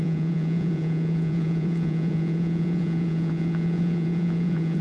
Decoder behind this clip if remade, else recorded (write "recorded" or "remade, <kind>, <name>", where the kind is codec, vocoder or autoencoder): remade, vocoder, Vocos